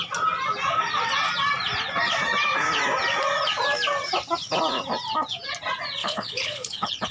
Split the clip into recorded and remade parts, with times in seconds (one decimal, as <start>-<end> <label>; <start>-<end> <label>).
0.0-6.0 recorded; 6.0-7.1 remade